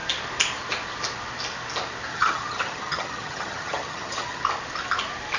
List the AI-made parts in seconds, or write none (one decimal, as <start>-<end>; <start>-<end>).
2.1-4.4